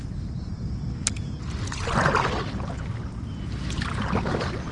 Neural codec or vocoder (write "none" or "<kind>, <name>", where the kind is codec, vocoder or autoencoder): none